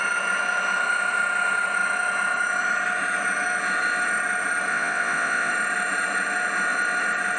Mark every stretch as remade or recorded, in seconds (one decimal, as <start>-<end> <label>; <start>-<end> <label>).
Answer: 0.0-4.7 recorded; 4.7-5.5 remade; 5.5-7.4 recorded